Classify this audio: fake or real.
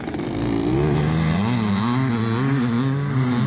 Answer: real